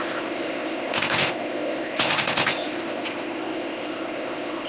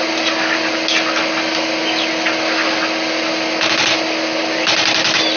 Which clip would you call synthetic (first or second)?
first